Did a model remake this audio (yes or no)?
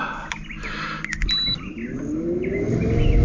no